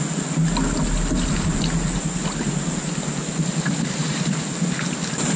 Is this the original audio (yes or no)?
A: yes